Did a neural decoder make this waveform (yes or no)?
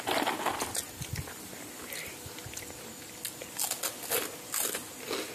no